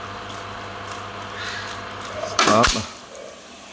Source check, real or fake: real